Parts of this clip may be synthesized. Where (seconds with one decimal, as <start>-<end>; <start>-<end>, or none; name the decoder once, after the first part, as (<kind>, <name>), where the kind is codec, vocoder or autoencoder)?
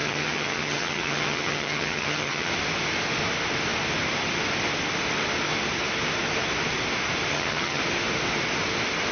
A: 0.0-2.5 (vocoder, HiFi-GAN); 7.3-7.8